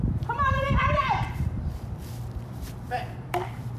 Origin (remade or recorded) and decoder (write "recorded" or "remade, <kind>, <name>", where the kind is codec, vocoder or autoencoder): remade, vocoder, BigVGAN v2